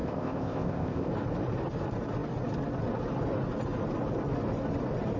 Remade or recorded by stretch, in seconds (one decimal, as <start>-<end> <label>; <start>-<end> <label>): 0.0-1.1 remade; 1.1-5.2 recorded